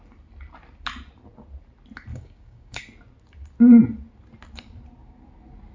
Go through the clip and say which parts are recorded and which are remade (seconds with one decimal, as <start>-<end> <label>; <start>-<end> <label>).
0.0-2.1 recorded; 2.1-2.8 remade; 2.8-5.7 recorded